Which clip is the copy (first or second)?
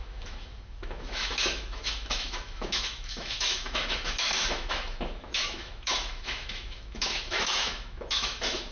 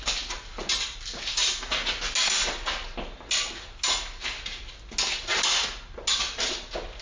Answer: first